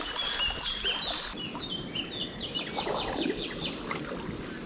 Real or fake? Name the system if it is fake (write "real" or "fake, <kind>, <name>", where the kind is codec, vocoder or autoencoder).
real